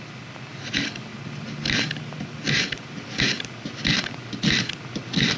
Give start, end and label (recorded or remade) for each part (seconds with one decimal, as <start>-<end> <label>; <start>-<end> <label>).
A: 0.0-5.4 recorded